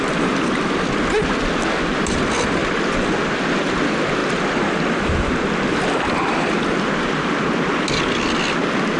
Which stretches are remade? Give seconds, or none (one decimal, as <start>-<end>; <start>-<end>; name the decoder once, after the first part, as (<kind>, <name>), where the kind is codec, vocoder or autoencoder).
4.2-6.5 (vocoder, BigVGAN v2)